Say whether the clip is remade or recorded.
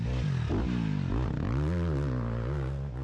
recorded